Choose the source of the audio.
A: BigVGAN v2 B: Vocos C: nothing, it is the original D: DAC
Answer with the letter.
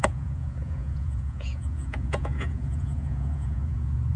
B